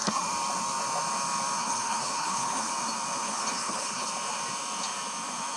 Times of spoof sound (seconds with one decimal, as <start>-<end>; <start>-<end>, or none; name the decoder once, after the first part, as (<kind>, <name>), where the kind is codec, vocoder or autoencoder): 1.6-2.7 (codec, HILCodec); 3.2-4.1